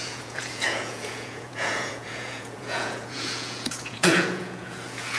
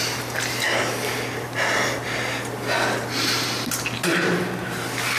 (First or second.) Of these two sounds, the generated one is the first